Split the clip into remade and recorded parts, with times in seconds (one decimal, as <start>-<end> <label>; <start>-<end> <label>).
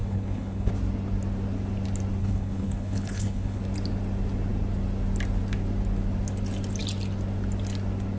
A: 0.0-0.7 remade; 0.7-2.2 recorded; 2.2-3.6 remade; 3.6-8.2 recorded